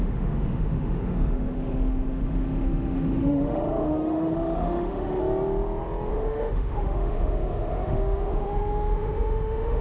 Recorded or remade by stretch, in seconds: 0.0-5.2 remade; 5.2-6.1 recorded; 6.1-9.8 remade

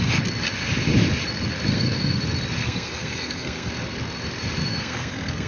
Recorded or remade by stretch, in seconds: 0.0-1.7 recorded; 1.7-2.2 remade; 2.2-2.6 recorded; 2.6-3.7 remade; 3.7-4.7 recorded; 4.7-5.5 remade

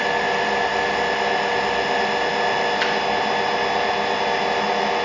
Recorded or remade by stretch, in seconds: 0.0-5.0 recorded

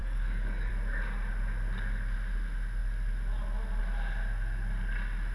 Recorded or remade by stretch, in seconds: 0.0-0.7 remade; 0.7-5.3 recorded

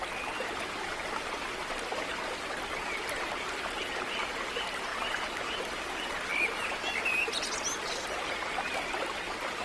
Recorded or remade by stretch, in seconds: 0.0-9.6 recorded

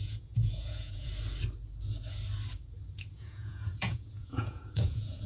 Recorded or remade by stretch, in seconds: 0.0-1.1 remade; 1.1-3.1 recorded; 3.1-5.3 remade

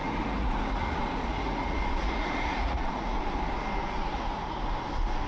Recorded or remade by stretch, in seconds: 0.0-3.2 remade; 3.2-3.8 recorded; 3.8-4.6 remade; 4.6-5.3 recorded